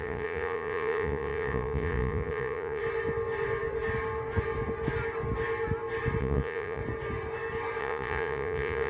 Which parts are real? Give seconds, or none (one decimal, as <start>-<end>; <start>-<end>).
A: 2.8-6.2; 6.8-7.8